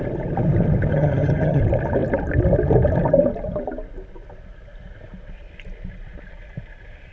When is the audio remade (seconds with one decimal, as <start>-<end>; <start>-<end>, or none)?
0.9-1.6